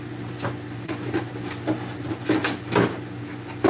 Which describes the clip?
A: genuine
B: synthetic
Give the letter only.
A